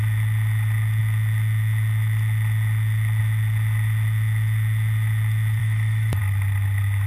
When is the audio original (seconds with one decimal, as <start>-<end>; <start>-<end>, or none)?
0.0-5.6; 6.2-7.1

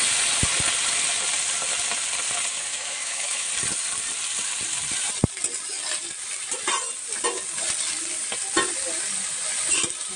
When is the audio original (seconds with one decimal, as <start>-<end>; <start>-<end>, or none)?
0.0-2.7; 3.5-10.2

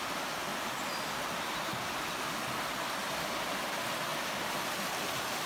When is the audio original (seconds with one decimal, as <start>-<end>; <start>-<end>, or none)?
0.0-5.5

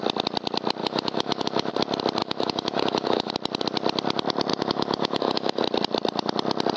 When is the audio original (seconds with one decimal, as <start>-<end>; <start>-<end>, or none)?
0.0-0.8; 1.7-2.2; 3.3-4.5; 5.6-6.8

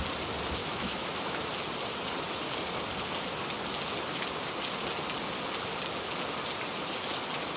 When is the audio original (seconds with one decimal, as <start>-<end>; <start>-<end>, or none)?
0.0-0.6; 1.5-7.6

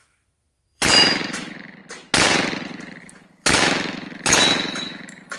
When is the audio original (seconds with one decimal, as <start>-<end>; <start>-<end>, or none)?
1.8-3.0